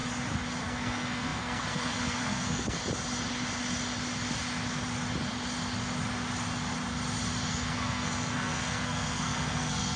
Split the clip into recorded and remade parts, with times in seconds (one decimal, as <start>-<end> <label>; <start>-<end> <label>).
0.0-0.6 recorded; 0.6-2.8 remade; 2.8-7.5 recorded; 7.5-10.0 remade